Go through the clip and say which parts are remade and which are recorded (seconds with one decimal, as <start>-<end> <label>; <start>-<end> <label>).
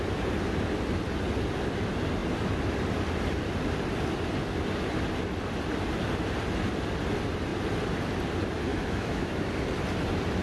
0.0-8.7 recorded; 8.7-9.5 remade; 9.5-10.4 recorded